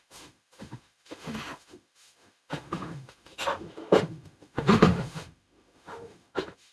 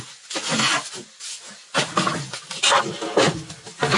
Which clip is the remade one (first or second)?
first